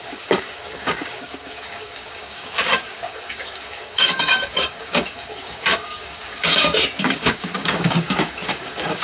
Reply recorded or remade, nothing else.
remade